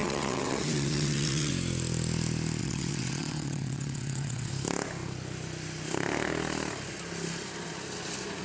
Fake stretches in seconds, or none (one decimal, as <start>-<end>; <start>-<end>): 0.0-1.5; 2.6-4.5